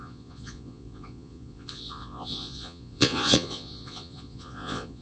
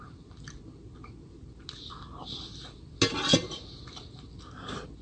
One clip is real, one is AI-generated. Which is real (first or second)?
second